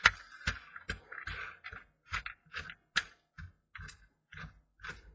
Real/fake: real